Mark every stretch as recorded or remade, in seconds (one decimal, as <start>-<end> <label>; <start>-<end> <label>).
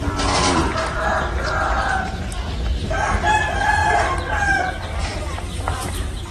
0.0-3.8 remade; 3.8-5.0 recorded; 5.0-6.3 remade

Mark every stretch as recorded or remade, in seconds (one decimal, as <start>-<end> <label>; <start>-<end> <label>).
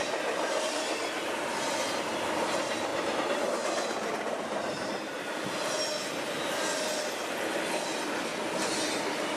0.0-2.4 remade; 2.4-2.9 recorded; 2.9-5.3 remade; 5.3-9.4 recorded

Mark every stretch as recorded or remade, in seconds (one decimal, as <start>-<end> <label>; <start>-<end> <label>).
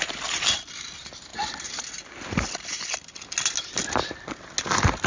0.0-5.1 recorded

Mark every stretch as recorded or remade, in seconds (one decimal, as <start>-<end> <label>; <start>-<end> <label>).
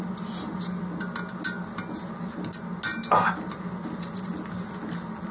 0.0-2.9 recorded; 2.9-3.5 remade; 3.5-5.3 recorded